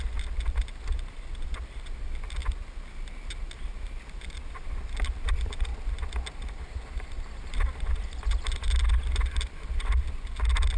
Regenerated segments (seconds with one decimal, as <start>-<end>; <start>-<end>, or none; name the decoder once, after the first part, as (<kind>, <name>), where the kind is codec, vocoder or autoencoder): none